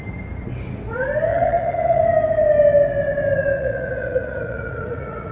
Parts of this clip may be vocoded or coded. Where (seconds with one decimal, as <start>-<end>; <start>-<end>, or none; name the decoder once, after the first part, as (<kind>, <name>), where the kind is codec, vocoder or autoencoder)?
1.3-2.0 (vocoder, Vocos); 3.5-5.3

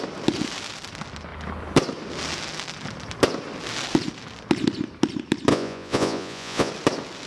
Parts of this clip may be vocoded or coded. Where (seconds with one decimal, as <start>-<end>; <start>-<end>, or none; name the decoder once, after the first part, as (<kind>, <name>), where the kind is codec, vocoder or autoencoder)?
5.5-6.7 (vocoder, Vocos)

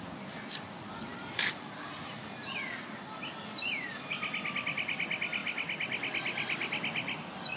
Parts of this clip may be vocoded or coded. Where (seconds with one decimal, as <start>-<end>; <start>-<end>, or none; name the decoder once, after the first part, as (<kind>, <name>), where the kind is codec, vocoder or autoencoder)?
none

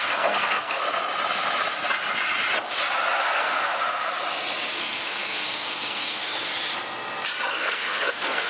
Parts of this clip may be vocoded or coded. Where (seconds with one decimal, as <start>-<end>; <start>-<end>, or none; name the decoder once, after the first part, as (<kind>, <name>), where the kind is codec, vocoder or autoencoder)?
0.0-0.8 (codec, SNAC); 3.2-3.7; 4.7-6.5; 7.5-8.5

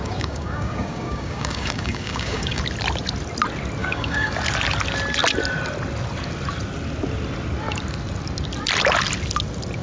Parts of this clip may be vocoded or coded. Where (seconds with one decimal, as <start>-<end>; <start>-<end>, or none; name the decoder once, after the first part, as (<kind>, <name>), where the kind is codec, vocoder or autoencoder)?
0.0-2.6 (codec, DAC); 3.8-4.3

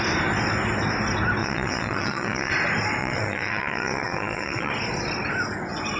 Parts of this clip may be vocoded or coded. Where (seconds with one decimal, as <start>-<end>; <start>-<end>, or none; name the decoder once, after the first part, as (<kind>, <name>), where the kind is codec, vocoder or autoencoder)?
1.4-2.5 (vocoder, WaveNeXt); 3.0-4.7